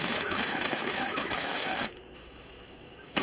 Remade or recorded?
remade